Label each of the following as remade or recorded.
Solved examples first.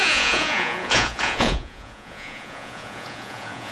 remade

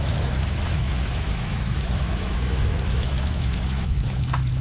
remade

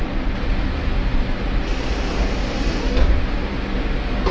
recorded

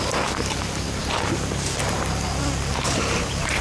recorded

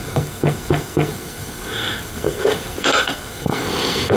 remade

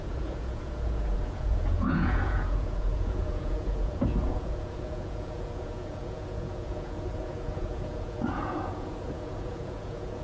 remade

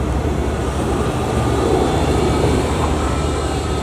remade